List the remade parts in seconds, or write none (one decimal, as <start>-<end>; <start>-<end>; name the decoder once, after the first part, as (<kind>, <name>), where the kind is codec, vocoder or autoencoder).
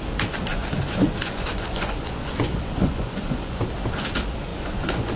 0.5-3.6 (vocoder, Vocos); 4.5-5.2